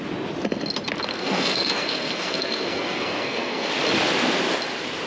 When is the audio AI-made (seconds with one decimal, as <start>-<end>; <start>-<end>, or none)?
1.1-3.7